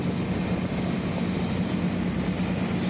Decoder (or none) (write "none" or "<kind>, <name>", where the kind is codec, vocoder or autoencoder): none